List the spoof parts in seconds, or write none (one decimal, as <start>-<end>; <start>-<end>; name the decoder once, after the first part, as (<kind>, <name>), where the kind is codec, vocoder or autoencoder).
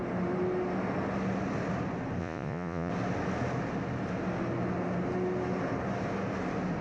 2.2-2.9 (vocoder, Vocos)